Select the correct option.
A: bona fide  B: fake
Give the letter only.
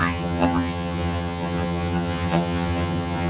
B